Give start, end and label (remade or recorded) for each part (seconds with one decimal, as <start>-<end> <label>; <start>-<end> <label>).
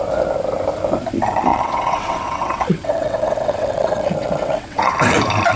0.0-1.5 recorded; 1.5-4.9 remade; 4.9-5.6 recorded